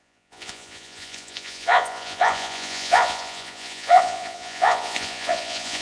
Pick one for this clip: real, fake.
fake